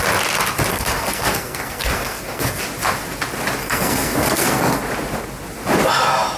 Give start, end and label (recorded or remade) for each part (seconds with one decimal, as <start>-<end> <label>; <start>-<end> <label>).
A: 0.0-0.7 recorded; 0.7-2.6 remade; 2.6-3.6 recorded; 3.6-4.8 remade; 4.8-6.4 recorded